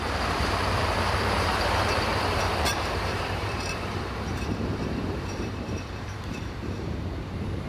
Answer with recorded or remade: remade